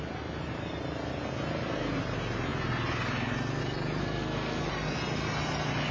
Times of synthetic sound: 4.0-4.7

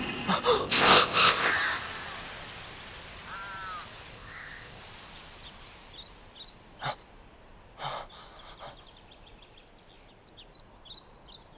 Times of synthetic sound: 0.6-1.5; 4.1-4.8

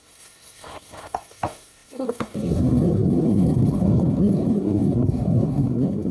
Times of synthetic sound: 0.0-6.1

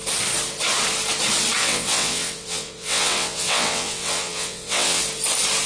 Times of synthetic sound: 1.6-5.0